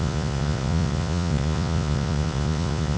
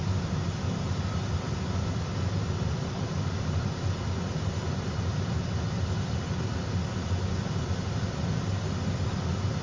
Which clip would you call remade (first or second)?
first